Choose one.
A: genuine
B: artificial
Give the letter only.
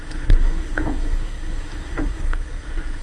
B